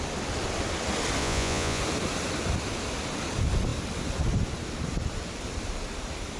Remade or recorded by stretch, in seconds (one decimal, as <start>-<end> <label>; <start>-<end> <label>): 0.0-1.2 recorded; 1.2-1.8 remade; 1.8-6.4 recorded